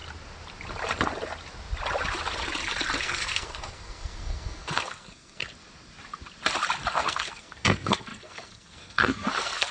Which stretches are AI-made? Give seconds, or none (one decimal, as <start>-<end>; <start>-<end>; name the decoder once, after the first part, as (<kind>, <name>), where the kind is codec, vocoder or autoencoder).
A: 3.0-5.4 (codec, SNAC); 6.9-9.7